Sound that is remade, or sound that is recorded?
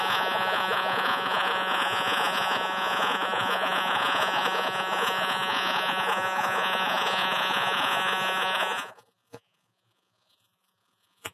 remade